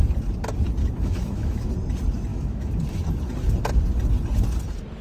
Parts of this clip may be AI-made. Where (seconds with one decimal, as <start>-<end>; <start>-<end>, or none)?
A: 0.8-1.7; 2.3-2.8